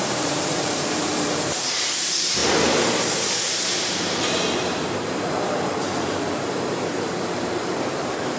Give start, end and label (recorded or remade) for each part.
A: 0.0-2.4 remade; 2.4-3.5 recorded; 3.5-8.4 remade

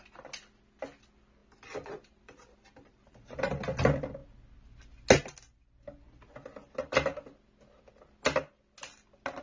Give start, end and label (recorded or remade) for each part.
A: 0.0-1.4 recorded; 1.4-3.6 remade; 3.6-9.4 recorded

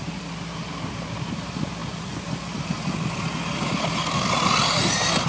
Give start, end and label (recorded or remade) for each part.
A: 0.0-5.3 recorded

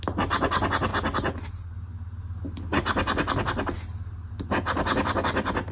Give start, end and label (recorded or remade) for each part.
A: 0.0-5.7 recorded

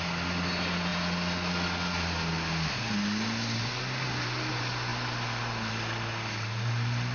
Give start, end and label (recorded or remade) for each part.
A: 0.0-7.1 recorded